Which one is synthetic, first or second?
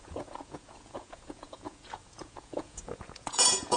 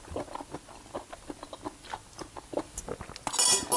first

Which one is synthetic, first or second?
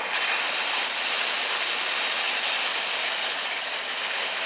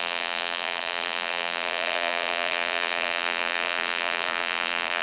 second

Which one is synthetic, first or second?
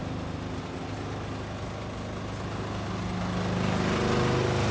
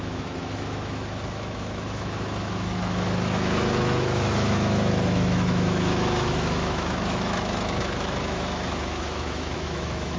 second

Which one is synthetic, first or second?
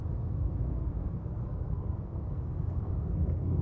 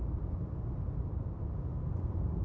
first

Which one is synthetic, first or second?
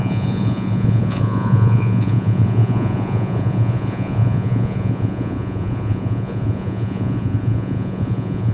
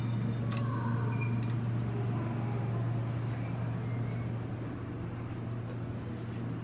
first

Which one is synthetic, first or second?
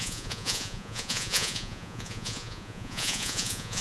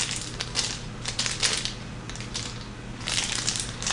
first